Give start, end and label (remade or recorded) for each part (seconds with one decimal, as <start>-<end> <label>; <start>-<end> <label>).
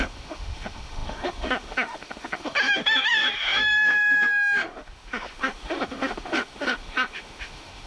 0.0-7.9 remade